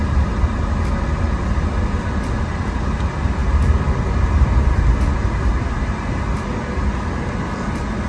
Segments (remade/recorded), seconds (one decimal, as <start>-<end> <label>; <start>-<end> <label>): 0.0-8.1 recorded